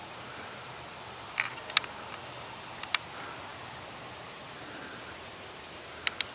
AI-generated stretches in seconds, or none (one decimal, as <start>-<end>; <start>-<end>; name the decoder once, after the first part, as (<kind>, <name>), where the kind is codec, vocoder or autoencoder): none